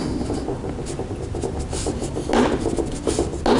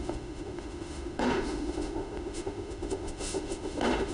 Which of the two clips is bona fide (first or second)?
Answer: first